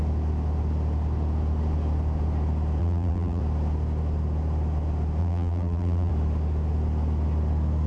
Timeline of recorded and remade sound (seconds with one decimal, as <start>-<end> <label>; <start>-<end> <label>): 0.0-2.8 recorded; 2.8-3.4 remade; 3.4-5.2 recorded; 5.2-6.1 remade; 6.1-7.9 recorded